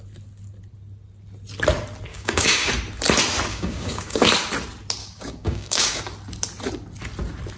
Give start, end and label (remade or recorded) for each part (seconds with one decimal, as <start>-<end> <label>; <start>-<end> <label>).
0.0-2.1 recorded; 2.1-2.7 remade; 2.7-3.5 recorded; 3.5-4.3 remade; 4.3-5.0 recorded; 5.0-6.0 remade; 6.0-7.6 recorded